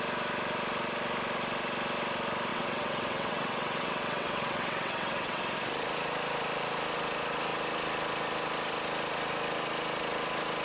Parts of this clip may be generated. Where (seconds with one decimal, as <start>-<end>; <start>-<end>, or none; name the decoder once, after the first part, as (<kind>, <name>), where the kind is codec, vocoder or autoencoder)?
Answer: 2.5-5.4 (vocoder, WaveNeXt)